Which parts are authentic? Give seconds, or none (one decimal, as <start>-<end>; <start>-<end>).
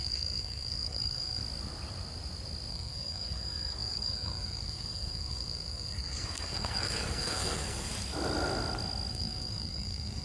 1.4-2.7; 7.9-9.1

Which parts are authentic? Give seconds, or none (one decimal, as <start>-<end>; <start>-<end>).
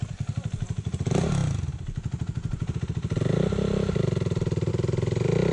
0.0-5.5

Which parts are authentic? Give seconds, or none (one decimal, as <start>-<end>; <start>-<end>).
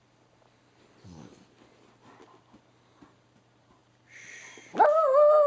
0.0-5.5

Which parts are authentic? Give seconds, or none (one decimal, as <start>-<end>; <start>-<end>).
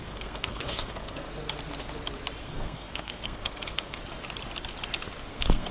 1.3-2.4; 4.0-5.3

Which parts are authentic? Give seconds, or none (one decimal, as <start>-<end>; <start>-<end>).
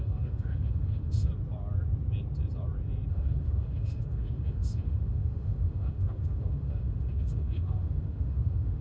1.3-3.1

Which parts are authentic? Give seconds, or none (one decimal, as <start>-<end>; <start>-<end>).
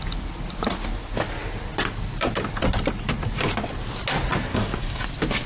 0.0-4.5; 5.0-5.5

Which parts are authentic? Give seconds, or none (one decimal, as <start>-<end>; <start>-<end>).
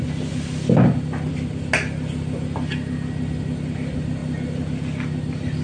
0.0-5.6